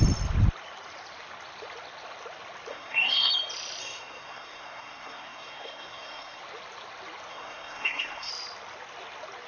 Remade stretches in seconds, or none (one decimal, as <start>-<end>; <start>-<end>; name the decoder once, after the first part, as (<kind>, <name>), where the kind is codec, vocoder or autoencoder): 2.7-3.3 (codec, SNAC); 3.8-6.4; 7.3-8.3